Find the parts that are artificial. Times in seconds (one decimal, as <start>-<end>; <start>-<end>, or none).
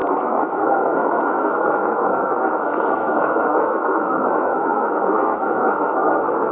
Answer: 0.0-6.5